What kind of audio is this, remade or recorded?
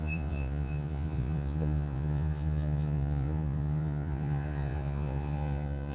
remade